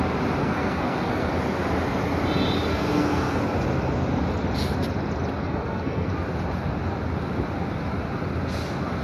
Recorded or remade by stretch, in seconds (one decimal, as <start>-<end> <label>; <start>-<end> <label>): 0.0-0.4 recorded; 0.4-1.3 remade; 1.3-2.7 recorded; 2.7-3.4 remade; 3.4-5.4 recorded; 5.4-6.1 remade; 6.1-9.0 recorded